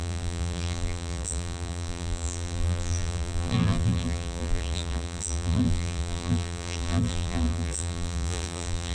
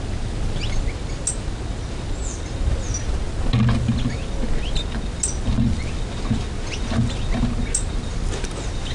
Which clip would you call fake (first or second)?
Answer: first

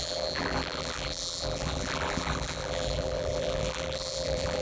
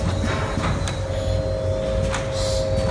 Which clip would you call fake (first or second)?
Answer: first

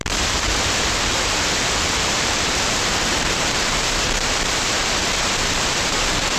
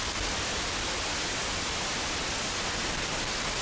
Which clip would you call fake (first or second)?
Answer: first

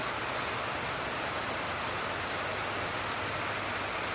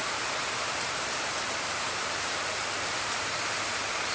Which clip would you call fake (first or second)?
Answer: second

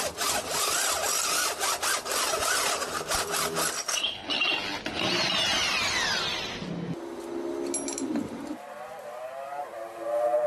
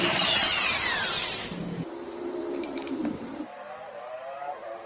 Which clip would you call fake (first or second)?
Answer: second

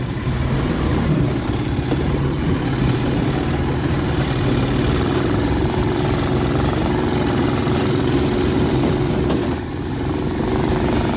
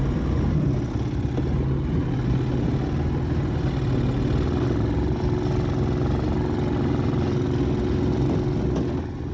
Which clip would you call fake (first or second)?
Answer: first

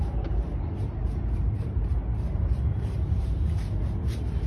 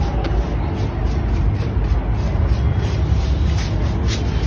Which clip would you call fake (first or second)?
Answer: first